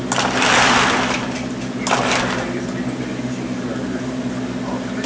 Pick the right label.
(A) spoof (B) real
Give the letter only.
B